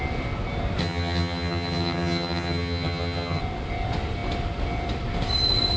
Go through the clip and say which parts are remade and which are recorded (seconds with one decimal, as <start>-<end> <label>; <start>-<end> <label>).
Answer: 0.0-0.8 recorded; 0.8-3.4 remade; 3.4-5.8 recorded